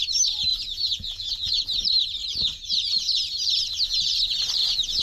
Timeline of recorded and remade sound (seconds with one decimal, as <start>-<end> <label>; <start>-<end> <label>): 0.0-0.5 recorded; 0.5-1.6 remade; 1.6-5.0 recorded